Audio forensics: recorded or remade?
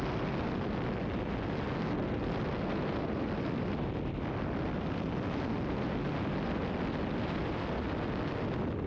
recorded